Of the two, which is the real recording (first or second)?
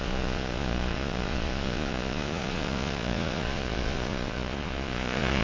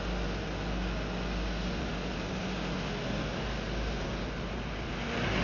second